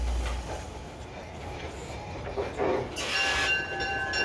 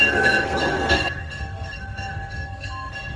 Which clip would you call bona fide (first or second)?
first